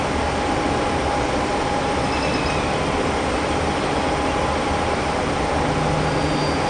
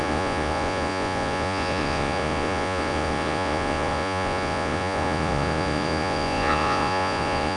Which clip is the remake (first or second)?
second